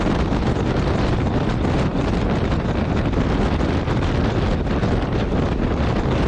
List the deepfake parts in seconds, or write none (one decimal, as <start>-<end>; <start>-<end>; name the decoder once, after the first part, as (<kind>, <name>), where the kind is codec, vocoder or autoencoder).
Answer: none